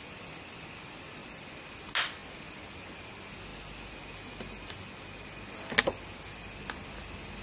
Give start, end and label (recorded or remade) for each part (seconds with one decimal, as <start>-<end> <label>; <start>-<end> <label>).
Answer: 0.0-7.4 recorded